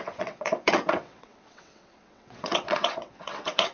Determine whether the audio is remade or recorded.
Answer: remade